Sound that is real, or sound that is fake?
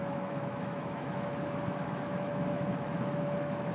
fake